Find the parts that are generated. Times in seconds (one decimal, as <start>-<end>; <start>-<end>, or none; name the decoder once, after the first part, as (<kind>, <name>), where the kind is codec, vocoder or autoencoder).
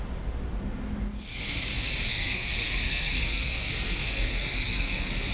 2.1-5.3 (codec, SNAC)